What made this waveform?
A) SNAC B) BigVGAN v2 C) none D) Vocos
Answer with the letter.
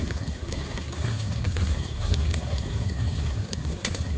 A